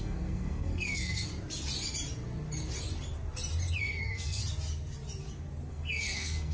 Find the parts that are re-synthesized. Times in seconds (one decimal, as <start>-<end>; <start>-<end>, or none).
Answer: 0.0-1.3; 3.8-4.4; 5.7-6.5